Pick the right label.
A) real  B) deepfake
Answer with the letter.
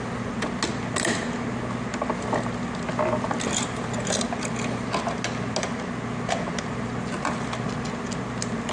A